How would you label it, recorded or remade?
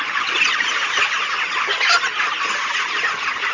recorded